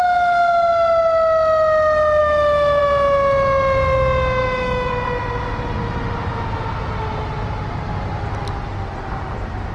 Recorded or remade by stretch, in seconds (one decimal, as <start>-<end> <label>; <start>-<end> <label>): 0.0-2.2 recorded; 2.2-2.8 remade; 2.8-4.4 recorded; 4.4-4.9 remade; 4.9-9.7 recorded